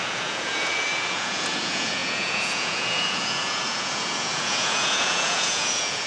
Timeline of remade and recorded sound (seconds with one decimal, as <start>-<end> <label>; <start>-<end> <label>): 0.0-6.1 remade